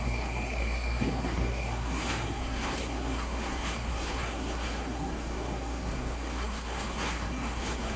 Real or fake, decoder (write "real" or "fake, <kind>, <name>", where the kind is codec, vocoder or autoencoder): fake, codec, SNAC